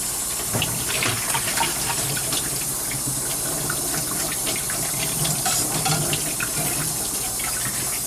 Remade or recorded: recorded